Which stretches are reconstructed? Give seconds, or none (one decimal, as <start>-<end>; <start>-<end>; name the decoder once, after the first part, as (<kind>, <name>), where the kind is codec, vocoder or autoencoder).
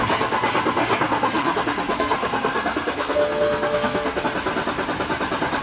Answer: 0.8-4.2 (codec, SNAC)